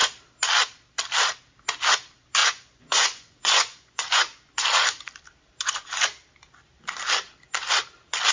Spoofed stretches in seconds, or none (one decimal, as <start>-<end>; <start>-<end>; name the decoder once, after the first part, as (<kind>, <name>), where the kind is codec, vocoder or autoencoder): 2.4-4.5 (vocoder, Vocos)